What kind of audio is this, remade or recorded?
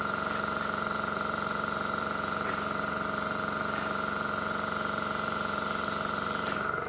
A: remade